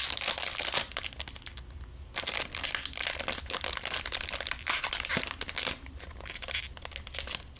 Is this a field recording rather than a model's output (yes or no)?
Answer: yes